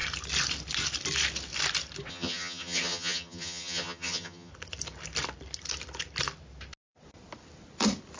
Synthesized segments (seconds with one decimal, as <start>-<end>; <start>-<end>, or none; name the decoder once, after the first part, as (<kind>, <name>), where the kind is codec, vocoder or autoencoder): 2.1-4.5 (vocoder, HiFi-GAN)